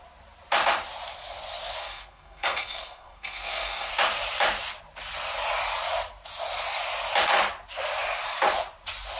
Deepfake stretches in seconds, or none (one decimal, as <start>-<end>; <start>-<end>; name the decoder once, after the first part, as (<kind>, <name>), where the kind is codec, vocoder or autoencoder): 1.8-3.9 (codec, SNAC)